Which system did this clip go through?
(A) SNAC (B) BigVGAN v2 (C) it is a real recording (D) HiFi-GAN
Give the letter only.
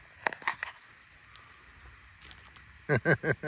C